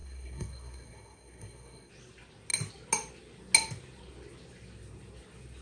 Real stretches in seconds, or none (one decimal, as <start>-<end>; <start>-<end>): 1.9-5.6